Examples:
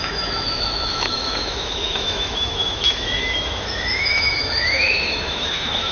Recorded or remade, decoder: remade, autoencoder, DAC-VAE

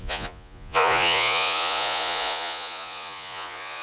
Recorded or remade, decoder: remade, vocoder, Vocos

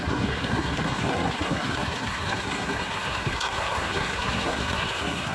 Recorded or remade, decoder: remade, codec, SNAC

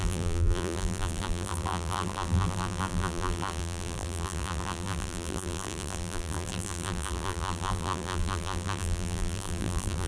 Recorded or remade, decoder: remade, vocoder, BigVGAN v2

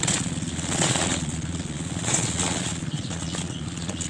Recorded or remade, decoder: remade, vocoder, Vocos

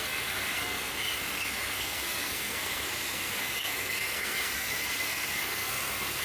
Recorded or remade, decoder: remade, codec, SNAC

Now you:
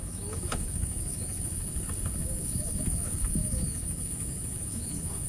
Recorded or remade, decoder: remade, autoencoder, DAC-VAE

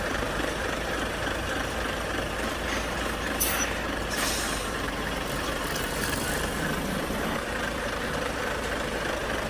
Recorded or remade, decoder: remade, vocoder, BigVGAN v2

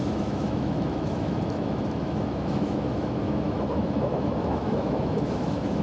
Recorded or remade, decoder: remade, autoencoder, DAC-VAE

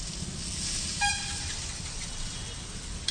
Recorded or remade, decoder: recorded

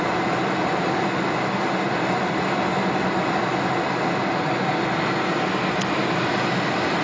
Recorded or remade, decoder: recorded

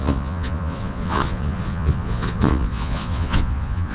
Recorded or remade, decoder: remade, vocoder, Vocos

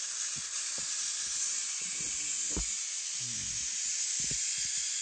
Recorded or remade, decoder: recorded